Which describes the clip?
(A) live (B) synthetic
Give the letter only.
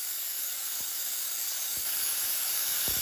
B